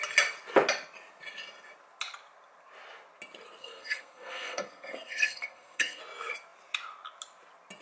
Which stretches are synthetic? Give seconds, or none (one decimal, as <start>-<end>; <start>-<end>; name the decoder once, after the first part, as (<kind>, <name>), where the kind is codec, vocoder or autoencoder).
3.6-6.0 (codec, SNAC)